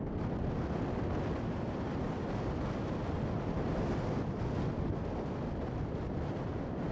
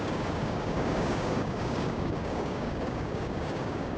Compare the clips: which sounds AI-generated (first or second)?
second